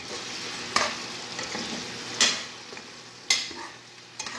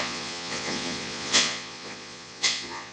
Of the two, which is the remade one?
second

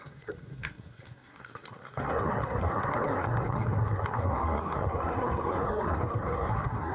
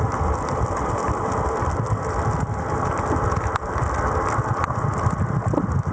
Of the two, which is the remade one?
first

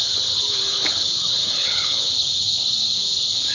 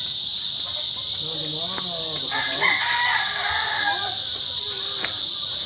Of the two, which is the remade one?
first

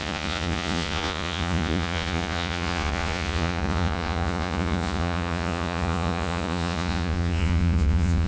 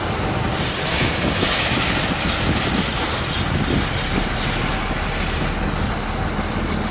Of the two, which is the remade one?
first